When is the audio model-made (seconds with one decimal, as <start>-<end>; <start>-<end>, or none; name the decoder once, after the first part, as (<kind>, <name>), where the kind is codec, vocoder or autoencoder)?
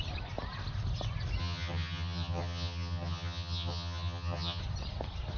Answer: 1.4-4.6 (vocoder, HiFi-GAN)